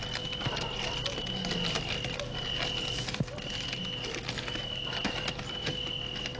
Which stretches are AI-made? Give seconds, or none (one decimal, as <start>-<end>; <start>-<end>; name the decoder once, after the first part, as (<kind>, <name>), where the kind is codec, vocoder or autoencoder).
none

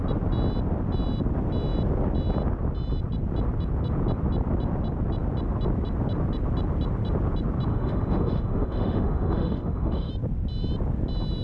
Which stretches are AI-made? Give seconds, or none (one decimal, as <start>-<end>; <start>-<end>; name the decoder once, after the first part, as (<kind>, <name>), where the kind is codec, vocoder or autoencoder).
7.7-10.1 (autoencoder, DAC-VAE)

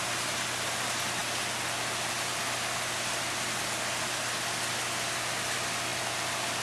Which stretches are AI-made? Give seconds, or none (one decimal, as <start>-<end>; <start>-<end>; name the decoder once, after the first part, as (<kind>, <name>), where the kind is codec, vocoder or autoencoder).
none

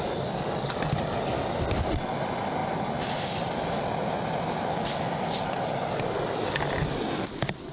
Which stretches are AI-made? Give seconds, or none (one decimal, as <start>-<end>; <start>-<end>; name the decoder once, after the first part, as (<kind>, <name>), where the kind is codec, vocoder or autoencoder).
none